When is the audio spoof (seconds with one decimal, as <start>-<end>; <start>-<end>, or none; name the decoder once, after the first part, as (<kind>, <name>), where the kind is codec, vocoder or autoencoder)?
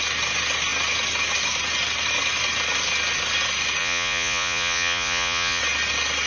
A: 3.8-5.6 (vocoder, Vocos)